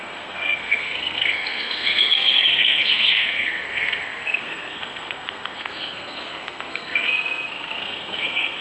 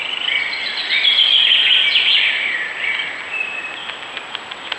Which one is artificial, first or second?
first